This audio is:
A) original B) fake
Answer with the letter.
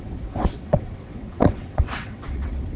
B